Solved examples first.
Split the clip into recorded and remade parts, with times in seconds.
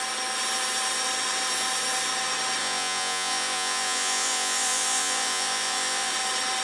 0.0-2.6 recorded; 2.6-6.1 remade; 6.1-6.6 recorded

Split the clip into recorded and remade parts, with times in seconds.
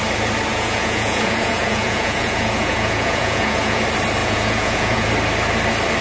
0.0-0.5 recorded; 0.5-3.8 remade; 3.8-4.2 recorded; 4.2-5.1 remade; 5.1-6.0 recorded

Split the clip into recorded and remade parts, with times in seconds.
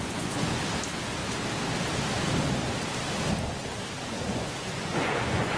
0.0-0.6 remade; 0.6-4.0 recorded; 4.0-5.6 remade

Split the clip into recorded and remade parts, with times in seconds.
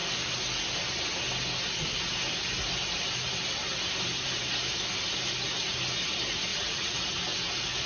0.0-6.5 recorded; 6.5-7.0 remade; 7.0-7.9 recorded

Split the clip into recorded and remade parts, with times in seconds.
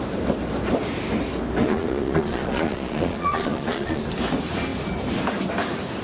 0.0-1.6 recorded; 1.6-4.0 remade; 4.0-6.0 recorded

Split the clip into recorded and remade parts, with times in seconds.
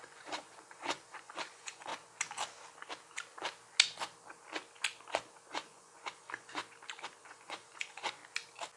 0.0-1.9 remade; 1.9-5.5 recorded; 5.5-6.6 remade; 6.6-7.2 recorded; 7.2-8.2 remade; 8.2-8.8 recorded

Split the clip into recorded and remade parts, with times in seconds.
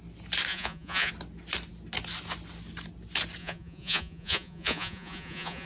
0.0-0.5 recorded; 0.5-1.1 remade; 1.1-3.4 recorded; 3.4-5.7 remade